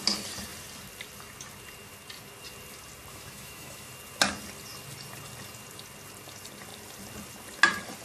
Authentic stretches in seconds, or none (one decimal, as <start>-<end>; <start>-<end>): 0.0-3.1; 3.9-8.0